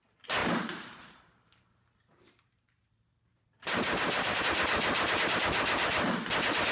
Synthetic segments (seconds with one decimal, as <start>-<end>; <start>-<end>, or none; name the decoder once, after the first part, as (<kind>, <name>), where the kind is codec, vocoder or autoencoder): 0.4-4.4 (vocoder, BigVGAN v2)